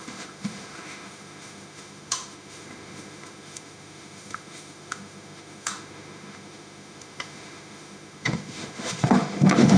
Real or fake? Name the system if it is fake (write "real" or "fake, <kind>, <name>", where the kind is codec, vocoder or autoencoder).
fake, autoencoder, DAC-VAE